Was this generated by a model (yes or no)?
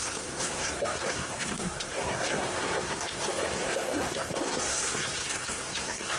yes